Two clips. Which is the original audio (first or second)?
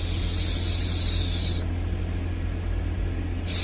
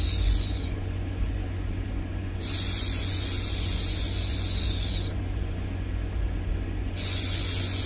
first